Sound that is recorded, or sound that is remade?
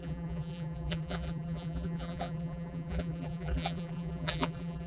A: remade